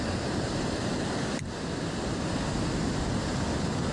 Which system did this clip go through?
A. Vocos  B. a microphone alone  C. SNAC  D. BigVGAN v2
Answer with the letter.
B